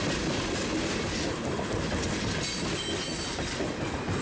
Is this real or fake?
real